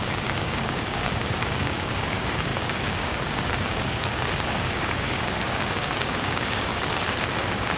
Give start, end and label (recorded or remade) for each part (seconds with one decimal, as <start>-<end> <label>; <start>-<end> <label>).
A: 0.0-6.7 remade; 6.7-7.2 recorded; 7.2-7.8 remade